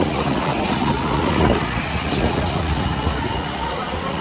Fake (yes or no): yes